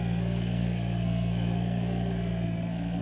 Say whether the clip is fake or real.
fake